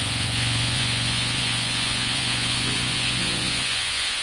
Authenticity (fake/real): fake